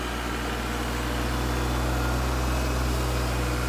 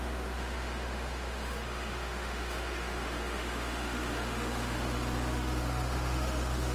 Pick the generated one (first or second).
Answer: second